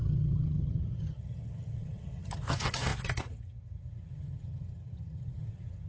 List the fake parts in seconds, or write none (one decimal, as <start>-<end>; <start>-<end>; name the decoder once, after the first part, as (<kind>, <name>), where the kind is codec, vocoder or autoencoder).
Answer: 0.0-5.9 (vocoder, HiFi-GAN)